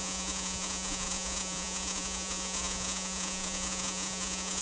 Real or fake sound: fake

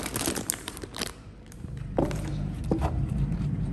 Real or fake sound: fake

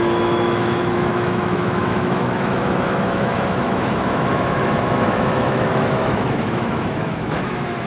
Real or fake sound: fake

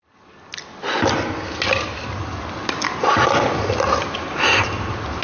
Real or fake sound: real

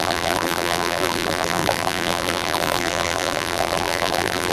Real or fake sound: fake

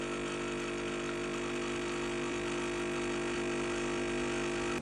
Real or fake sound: fake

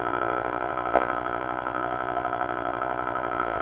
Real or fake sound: fake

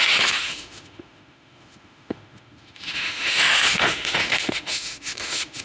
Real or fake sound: fake